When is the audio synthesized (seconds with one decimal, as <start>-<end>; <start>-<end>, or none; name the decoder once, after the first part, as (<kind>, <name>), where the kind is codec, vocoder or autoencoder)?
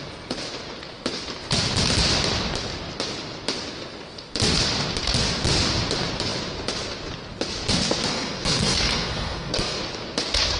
8.1-9.8 (codec, SNAC)